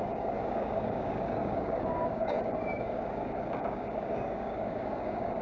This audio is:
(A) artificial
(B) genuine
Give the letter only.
A